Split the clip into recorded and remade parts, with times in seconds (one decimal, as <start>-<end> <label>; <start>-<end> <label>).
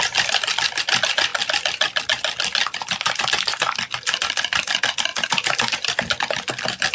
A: 0.0-1.3 recorded; 1.3-2.0 remade; 2.0-5.1 recorded; 5.1-6.0 remade; 6.0-6.9 recorded